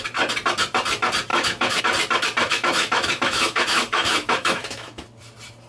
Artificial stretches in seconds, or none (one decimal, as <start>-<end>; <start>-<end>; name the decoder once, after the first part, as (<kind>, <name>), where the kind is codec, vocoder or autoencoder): 1.3-1.8 (autoencoder, DAC-VAE); 2.4-5.0